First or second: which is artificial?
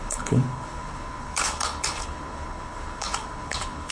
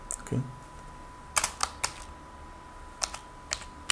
first